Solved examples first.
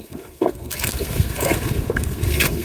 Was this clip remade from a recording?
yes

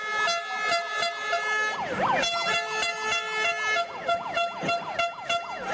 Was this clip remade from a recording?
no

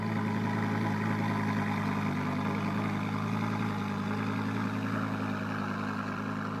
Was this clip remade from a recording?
no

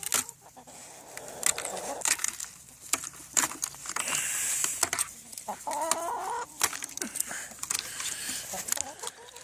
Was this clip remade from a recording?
no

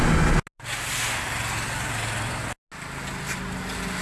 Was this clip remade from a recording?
no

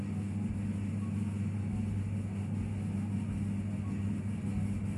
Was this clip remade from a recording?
no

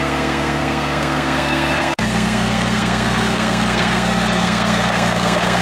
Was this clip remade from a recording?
yes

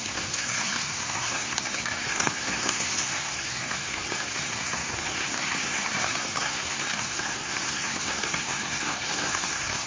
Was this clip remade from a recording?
yes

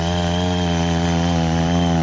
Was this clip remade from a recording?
no